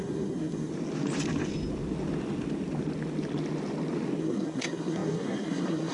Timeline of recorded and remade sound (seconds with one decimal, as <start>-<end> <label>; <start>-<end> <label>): 0.0-0.7 remade; 0.7-4.2 recorded; 4.2-5.9 remade